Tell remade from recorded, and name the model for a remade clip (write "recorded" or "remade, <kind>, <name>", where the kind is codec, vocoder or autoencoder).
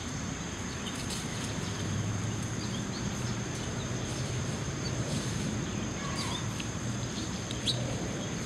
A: remade, vocoder, BigVGAN v2